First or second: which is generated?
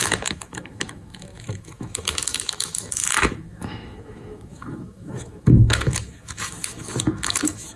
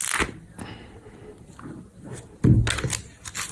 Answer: first